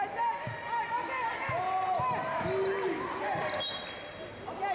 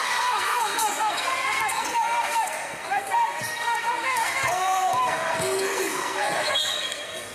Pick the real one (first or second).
first